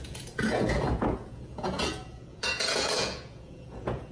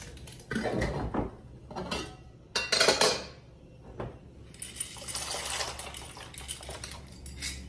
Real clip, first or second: second